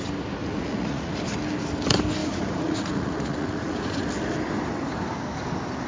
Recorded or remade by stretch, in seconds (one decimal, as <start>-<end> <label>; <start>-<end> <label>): 0.0-0.4 recorded; 0.4-1.1 remade; 1.1-2.2 recorded; 2.2-4.0 remade; 4.0-5.9 recorded